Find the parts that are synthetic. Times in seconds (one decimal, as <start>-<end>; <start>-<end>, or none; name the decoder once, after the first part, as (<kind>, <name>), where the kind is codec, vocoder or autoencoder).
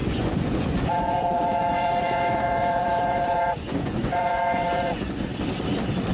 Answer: 0.0-5.3 (vocoder, Vocos)